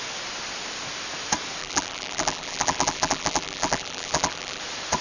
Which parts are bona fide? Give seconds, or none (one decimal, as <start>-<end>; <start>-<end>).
0.0-1.6; 4.6-5.0